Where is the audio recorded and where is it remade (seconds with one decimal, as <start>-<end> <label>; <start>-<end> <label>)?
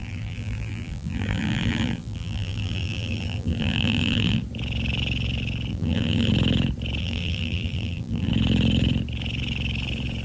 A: 0.0-4.4 remade; 4.4-5.7 recorded; 5.7-6.3 remade; 6.3-7.0 recorded; 7.0-8.3 remade; 8.3-10.2 recorded